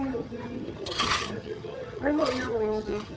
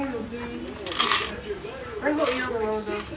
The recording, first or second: second